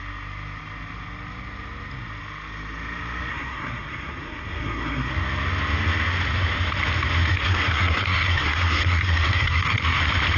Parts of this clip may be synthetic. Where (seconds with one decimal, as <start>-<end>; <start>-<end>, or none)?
3.3-5.1; 7.3-10.0